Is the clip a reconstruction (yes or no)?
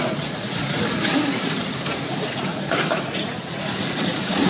yes